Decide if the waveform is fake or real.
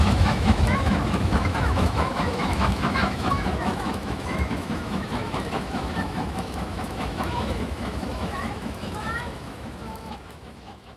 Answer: fake